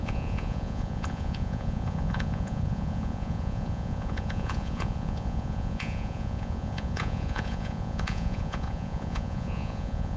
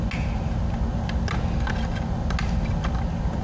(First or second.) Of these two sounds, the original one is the second